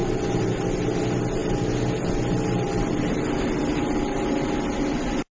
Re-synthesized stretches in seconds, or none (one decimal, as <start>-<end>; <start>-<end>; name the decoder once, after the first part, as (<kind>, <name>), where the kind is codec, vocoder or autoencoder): 0.0-0.6 (vocoder, BigVGAN v2)